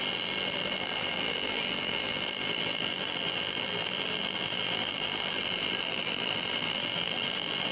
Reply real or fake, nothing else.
fake